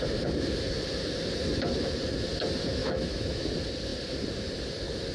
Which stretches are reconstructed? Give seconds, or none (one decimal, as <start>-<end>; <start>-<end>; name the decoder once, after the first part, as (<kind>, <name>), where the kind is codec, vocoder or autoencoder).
2.8-3.5 (autoencoder, DAC-VAE)

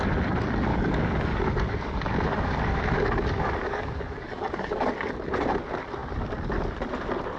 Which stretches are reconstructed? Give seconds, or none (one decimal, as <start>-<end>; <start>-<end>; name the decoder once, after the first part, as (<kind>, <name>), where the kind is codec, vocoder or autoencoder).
0.7-4.9 (codec, DAC)

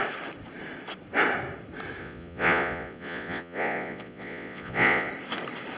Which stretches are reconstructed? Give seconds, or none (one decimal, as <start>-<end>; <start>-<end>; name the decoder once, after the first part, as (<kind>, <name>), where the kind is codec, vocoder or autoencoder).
2.0-5.1 (vocoder, Vocos)

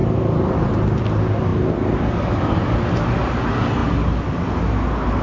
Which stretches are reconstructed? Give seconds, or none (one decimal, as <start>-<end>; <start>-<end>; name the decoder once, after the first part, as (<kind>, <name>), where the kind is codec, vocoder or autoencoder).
none

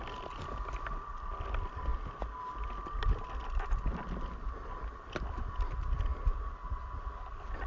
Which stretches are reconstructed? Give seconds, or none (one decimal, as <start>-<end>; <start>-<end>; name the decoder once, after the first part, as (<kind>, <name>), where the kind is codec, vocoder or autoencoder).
none